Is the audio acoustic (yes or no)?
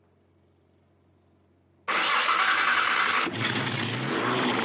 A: yes